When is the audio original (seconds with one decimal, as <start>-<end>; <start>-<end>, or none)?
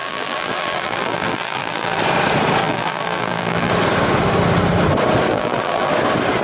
2.0-2.6; 3.7-5.3; 5.9-6.4